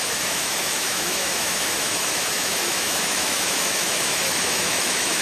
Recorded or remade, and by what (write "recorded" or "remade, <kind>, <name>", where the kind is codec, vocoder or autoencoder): remade, autoencoder, DAC-VAE